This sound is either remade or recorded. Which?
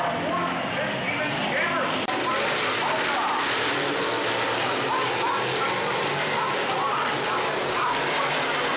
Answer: recorded